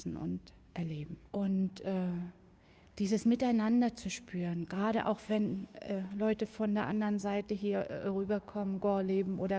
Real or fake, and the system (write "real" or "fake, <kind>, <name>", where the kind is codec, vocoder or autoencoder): fake, codec, DAC